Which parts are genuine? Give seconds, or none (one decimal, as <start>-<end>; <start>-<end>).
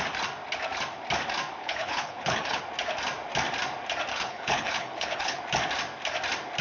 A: 0.0-1.6; 2.6-4.1; 5.4-6.6